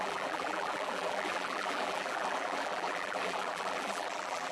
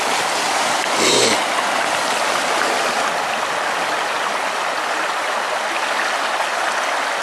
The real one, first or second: second